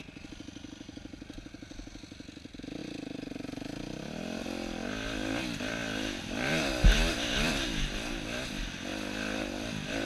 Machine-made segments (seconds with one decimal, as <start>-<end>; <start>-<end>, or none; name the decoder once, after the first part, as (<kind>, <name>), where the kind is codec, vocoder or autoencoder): 2.8-4.4 (vocoder, BigVGAN v2); 5.8-7.5; 8.9-10.1

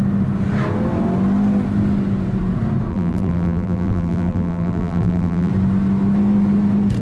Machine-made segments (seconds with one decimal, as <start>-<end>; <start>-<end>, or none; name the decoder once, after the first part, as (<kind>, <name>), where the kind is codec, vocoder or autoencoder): 2.9-5.5 (vocoder, BigVGAN v2)

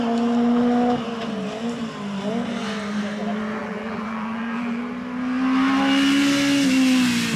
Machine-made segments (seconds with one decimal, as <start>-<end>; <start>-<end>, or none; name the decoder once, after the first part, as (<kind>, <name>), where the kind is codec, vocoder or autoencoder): 3.6-4.8 (vocoder, BigVGAN v2)

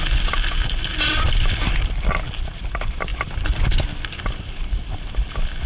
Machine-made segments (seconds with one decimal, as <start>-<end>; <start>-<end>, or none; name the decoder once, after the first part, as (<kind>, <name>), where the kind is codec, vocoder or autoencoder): 0.9-1.8 (vocoder, BigVGAN v2)